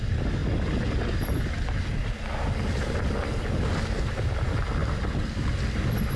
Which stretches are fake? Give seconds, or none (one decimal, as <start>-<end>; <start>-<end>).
none